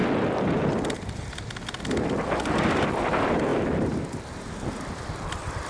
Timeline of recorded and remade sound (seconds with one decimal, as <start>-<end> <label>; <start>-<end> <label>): 0.0-1.8 recorded; 1.8-3.5 remade; 3.5-4.3 recorded; 4.3-5.7 remade